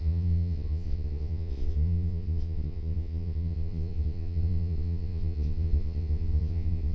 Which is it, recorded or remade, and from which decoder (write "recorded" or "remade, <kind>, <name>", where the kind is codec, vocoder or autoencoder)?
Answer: remade, vocoder, Vocos